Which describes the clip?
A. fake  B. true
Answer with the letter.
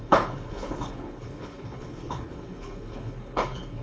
A